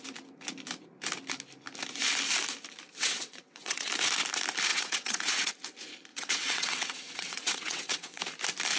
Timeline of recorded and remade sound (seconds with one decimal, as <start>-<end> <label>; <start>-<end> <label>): 0.0-3.0 recorded; 3.0-3.9 remade; 3.9-4.7 recorded; 4.7-5.5 remade; 5.5-6.1 recorded; 6.1-8.2 remade; 8.2-8.8 recorded